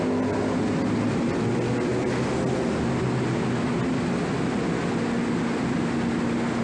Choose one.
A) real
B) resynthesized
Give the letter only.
A